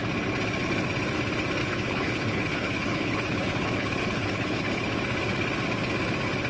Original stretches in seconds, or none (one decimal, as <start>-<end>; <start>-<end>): 0.0-1.6; 4.9-6.5

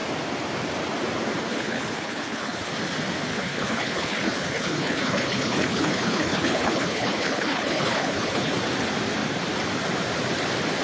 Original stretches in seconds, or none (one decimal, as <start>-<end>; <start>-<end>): 0.0-1.5; 2.7-3.3; 8.5-10.8

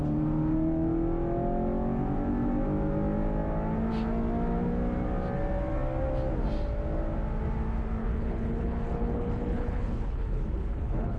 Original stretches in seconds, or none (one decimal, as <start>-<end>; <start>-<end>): 0.0-8.0